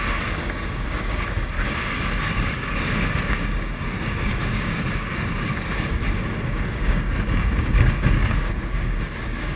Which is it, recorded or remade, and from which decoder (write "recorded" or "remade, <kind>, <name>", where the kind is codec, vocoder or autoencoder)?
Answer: remade, codec, DAC